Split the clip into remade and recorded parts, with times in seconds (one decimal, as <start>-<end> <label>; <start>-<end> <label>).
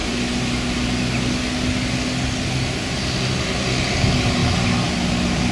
0.0-5.5 recorded